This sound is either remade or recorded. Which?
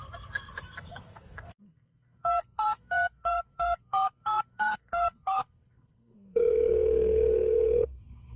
remade